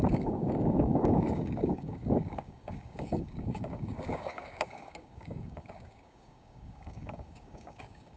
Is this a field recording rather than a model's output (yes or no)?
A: no